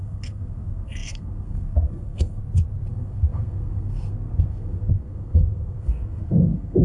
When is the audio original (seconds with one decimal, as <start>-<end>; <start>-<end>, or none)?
2.4-2.9